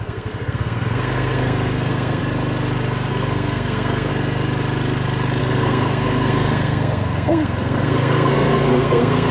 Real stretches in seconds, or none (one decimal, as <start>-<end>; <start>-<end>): 2.2-3.1; 4.1-5.4

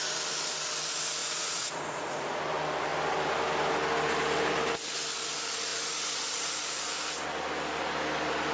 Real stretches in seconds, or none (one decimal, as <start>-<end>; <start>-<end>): 0.0-1.2; 2.4-8.5

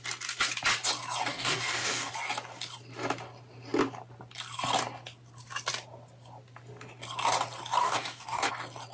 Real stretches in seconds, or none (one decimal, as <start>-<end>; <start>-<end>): 0.0-1.3; 2.1-7.8; 8.5-8.9

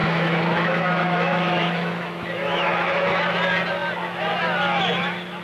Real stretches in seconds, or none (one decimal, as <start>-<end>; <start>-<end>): 3.2-5.4

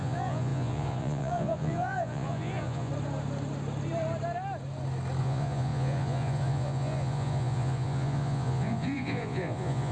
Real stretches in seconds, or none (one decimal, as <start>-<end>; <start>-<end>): 2.9-5.2

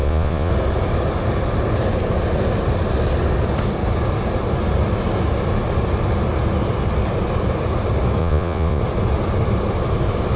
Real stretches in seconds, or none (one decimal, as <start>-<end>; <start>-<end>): 0.5-8.2; 8.8-10.4